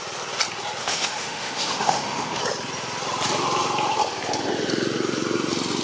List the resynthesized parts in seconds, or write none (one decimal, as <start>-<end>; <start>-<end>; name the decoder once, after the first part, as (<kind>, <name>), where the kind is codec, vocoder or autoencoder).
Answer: 0.8-2.4 (autoencoder, DAC-VAE)